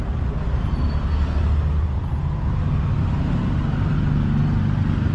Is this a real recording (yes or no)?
yes